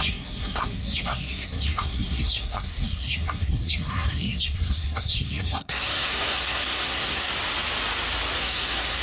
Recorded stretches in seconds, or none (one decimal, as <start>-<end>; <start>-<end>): 7.3-8.4